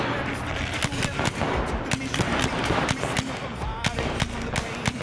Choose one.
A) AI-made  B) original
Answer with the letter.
B